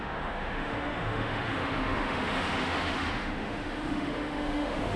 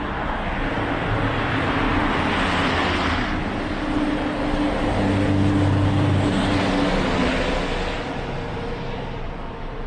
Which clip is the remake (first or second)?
first